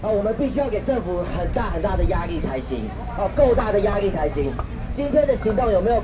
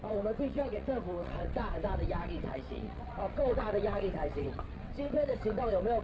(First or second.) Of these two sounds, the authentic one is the first